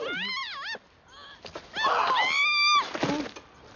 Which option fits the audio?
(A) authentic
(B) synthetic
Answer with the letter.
A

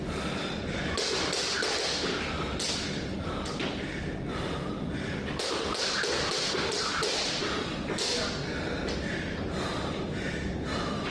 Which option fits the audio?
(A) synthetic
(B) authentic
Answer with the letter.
B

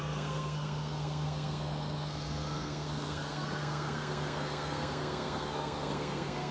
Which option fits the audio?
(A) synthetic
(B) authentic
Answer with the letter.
A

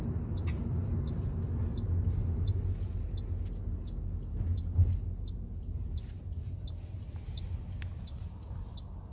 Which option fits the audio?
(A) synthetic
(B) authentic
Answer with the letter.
B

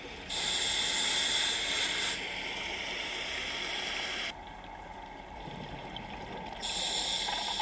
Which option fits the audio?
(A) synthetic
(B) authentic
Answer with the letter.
B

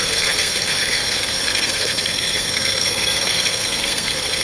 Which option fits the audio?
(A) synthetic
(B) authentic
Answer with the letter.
A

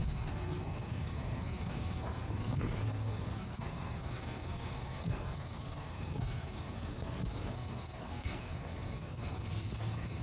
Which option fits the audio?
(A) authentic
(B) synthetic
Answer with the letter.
B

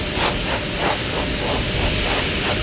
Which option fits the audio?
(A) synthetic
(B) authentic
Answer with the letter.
B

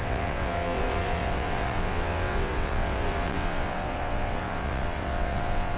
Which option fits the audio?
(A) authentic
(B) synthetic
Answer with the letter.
B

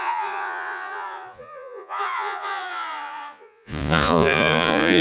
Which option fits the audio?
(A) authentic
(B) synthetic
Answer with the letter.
B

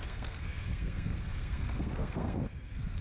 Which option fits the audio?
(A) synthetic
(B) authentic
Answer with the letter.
A